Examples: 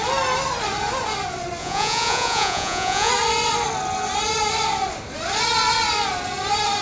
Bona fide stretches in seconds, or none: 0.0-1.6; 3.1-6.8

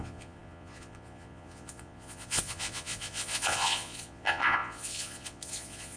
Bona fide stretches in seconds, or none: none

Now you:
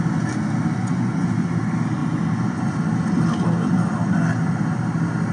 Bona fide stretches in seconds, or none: 0.0-0.8; 1.6-5.3

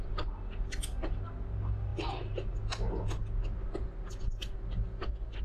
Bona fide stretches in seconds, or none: 0.0-5.4